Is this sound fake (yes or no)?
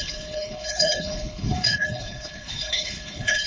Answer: yes